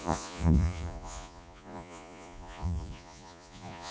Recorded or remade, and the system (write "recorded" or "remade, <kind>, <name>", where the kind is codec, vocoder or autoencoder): remade, vocoder, Vocos